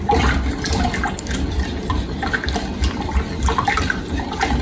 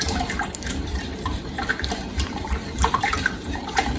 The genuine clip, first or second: first